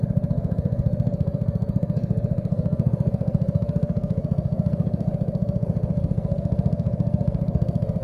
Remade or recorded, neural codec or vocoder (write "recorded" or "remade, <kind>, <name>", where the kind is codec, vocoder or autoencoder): remade, codec, SNAC